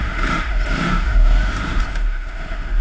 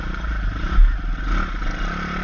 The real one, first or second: second